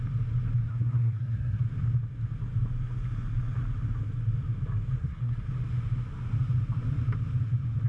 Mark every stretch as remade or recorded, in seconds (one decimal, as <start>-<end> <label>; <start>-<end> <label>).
0.0-0.7 recorded; 0.7-1.6 remade; 1.6-5.0 recorded; 5.0-5.5 remade; 5.5-7.9 recorded